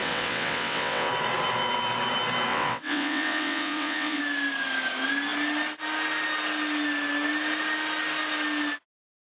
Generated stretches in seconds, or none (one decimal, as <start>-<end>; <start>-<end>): 0.0-1.1; 2.5-4.2